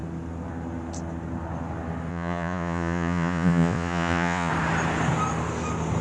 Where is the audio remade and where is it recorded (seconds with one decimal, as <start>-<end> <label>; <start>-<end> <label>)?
0.0-2.1 recorded; 2.1-4.5 remade; 4.5-6.0 recorded